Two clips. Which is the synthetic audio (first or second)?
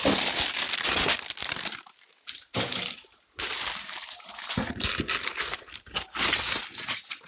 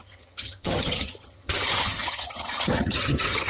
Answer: second